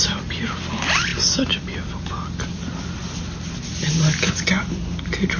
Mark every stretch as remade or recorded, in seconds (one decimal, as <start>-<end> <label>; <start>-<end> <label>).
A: 0.0-5.4 recorded